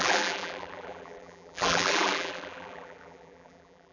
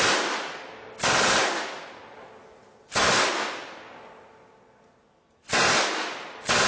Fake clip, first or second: first